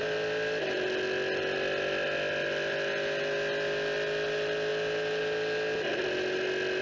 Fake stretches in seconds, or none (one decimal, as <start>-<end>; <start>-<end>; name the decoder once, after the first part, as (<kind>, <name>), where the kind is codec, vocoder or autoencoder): none